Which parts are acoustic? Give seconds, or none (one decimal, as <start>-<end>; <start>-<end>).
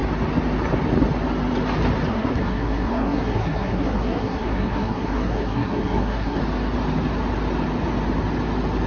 0.0-2.1; 6.4-8.9